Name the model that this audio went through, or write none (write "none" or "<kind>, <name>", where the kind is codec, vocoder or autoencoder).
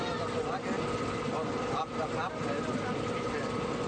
none